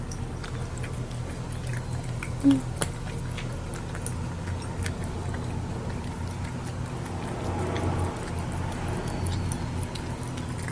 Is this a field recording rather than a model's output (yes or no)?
yes